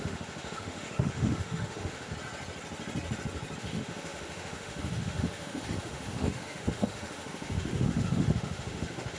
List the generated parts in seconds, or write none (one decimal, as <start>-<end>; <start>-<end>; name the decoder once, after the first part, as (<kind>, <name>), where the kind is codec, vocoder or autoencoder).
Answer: 0.0-2.1 (autoencoder, DAC-VAE); 3.6-9.2